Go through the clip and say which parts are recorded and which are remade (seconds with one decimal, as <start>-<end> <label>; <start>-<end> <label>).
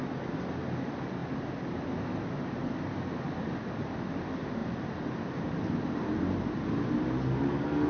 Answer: 0.0-7.9 recorded